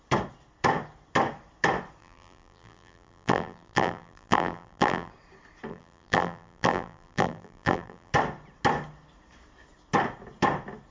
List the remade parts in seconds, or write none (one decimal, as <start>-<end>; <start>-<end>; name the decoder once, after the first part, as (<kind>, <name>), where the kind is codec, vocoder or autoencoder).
2.0-5.1 (vocoder, BigVGAN v2); 5.7-8.1

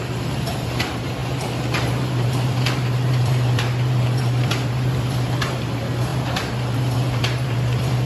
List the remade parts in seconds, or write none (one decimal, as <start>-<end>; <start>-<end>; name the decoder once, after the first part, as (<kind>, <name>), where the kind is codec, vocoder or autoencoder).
0.0-8.1 (vocoder, BigVGAN v2)

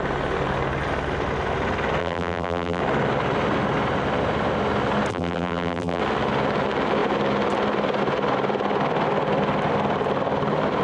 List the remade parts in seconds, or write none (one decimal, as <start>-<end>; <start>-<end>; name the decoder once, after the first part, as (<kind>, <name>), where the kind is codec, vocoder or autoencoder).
2.0-2.8 (vocoder, BigVGAN v2); 5.1-6.0

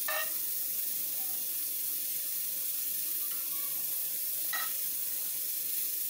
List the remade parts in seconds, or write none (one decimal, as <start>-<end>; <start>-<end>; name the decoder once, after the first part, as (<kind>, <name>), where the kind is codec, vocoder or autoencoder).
0.6-1.2 (vocoder, BigVGAN v2); 2.1-3.2; 4.0-4.6

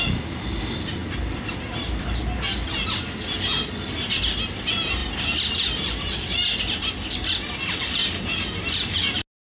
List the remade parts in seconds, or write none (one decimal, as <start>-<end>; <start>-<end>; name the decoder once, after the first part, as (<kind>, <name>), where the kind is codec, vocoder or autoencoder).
1.0-2.0 (vocoder, BigVGAN v2); 5.0-6.6